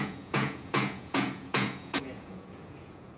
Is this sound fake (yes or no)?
yes